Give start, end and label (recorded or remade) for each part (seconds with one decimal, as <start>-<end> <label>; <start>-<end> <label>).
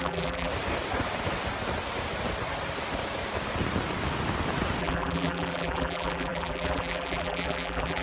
0.0-0.5 remade; 0.5-4.8 recorded; 4.8-8.0 remade